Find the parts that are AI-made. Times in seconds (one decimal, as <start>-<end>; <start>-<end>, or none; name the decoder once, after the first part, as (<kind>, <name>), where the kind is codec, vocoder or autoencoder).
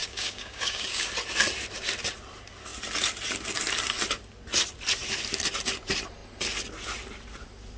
0.0-1.1 (codec, DAC)